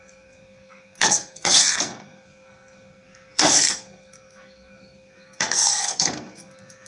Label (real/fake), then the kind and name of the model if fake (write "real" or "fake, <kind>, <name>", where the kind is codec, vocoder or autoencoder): fake, codec, SNAC